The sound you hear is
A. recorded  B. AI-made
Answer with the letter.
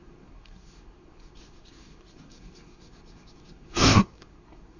B